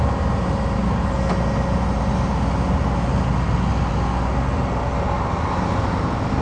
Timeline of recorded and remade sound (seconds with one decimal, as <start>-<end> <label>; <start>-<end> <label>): 0.0-6.4 recorded